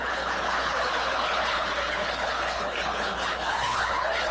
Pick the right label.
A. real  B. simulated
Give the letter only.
B